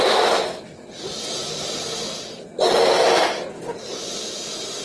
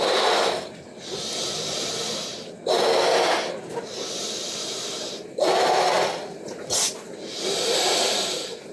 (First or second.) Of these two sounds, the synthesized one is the second